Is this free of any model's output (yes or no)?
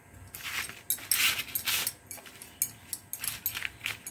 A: yes